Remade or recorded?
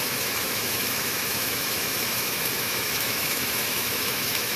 remade